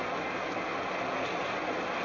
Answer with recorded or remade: recorded